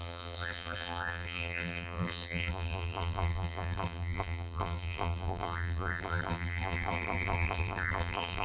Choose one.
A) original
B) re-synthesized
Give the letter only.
B